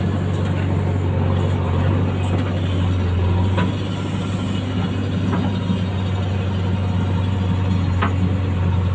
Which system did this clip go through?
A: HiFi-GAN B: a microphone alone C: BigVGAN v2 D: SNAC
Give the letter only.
B